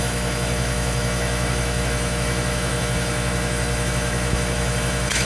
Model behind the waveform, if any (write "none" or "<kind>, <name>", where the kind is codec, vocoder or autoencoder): autoencoder, DAC-VAE